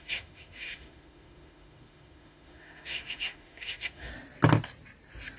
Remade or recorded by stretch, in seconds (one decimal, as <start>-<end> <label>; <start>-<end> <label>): 0.0-4.1 remade; 4.1-5.4 recorded